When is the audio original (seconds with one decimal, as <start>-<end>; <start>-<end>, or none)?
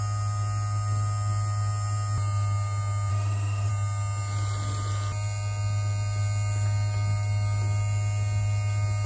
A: 0.0-3.1; 3.7-9.1